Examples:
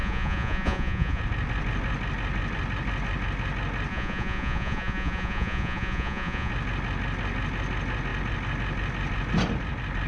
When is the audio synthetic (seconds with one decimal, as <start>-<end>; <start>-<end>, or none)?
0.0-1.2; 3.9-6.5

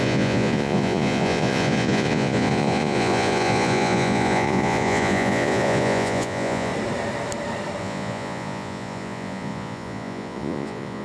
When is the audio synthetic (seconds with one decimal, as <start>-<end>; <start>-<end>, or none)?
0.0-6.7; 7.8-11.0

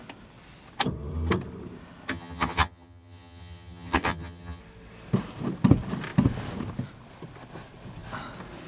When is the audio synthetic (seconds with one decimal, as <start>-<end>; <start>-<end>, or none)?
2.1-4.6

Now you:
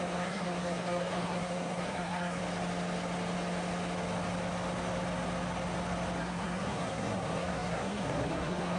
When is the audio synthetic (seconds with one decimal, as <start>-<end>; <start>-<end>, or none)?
0.0-2.4; 6.2-8.8